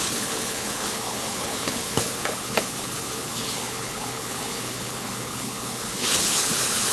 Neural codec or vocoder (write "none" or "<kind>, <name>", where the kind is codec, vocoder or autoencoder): codec, HILCodec